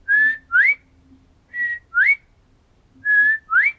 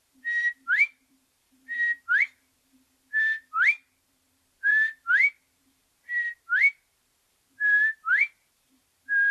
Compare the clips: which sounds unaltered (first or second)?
first